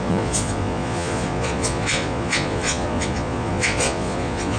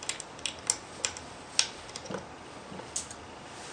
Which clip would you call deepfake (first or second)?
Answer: first